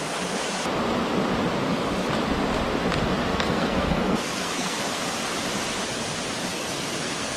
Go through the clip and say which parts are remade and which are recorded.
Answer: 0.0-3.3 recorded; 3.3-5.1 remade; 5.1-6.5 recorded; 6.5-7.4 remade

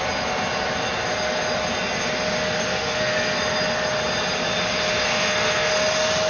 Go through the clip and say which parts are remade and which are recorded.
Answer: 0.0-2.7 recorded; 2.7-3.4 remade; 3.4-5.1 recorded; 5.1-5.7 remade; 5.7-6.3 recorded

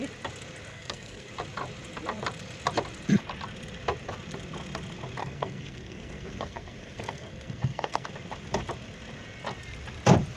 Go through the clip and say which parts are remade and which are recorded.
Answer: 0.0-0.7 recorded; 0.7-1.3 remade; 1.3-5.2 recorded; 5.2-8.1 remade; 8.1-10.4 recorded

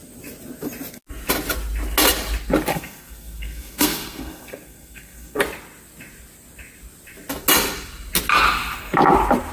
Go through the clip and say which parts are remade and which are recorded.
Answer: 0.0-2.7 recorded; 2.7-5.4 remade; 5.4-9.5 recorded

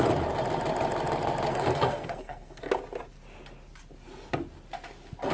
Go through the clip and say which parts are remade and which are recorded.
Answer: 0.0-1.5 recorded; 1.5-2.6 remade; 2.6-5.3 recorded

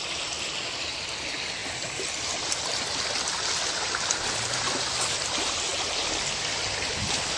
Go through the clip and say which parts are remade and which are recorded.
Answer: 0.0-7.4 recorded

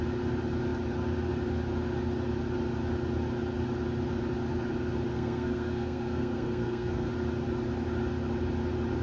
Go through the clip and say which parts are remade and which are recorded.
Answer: 0.0-5.1 recorded; 5.1-7.1 remade; 7.1-9.0 recorded